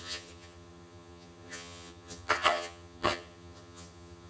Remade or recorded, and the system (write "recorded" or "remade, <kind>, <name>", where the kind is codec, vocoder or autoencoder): remade, vocoder, HiFi-GAN